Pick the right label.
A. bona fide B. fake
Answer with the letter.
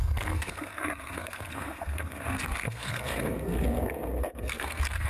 B